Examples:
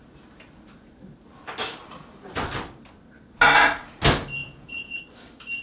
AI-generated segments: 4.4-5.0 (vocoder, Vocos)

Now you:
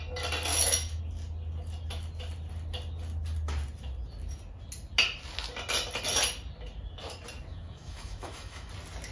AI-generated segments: 0.5-1.0 (autoencoder, DAC-VAE); 7.5-8.7

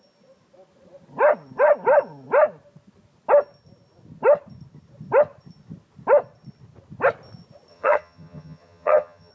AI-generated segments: 7.7-9.3 (vocoder, HiFi-GAN)

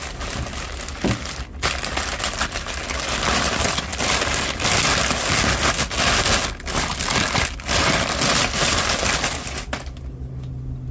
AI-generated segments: none

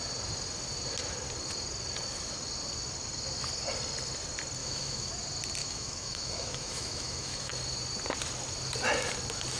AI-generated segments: 4.6-5.1 (autoencoder, DAC-VAE); 5.6-7.5

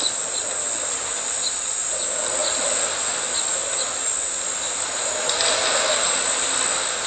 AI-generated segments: none